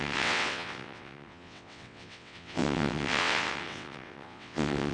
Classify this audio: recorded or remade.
remade